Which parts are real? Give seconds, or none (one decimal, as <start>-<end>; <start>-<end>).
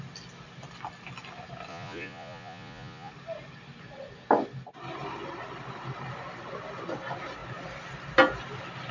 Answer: 0.0-1.7; 3.1-8.9